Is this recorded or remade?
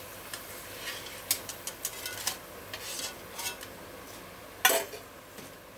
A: recorded